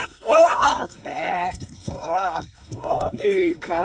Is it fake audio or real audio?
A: fake